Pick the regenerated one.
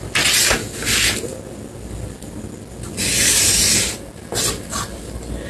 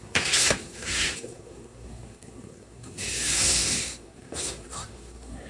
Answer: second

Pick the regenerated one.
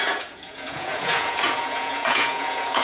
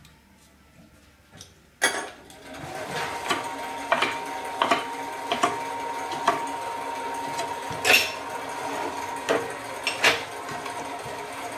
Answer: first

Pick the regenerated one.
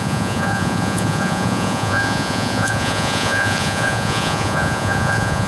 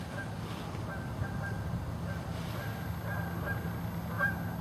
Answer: first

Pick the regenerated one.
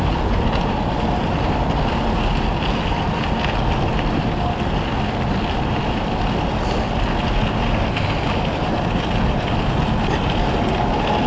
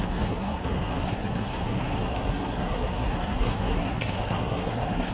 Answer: second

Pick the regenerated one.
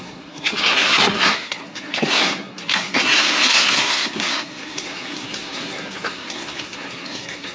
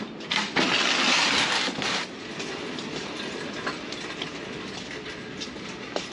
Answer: first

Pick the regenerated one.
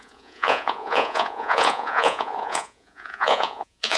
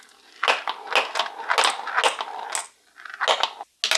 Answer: first